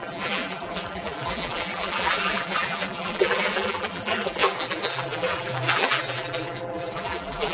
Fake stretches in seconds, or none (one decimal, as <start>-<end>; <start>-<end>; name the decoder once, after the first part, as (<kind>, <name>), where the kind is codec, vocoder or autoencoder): 0.0-7.5 (vocoder, BigVGAN v2)